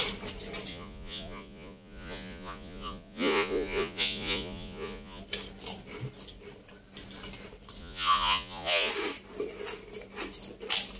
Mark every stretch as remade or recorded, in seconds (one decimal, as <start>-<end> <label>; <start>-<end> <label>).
0.0-0.7 recorded; 0.7-5.2 remade; 5.2-7.8 recorded; 7.8-8.9 remade; 8.9-11.0 recorded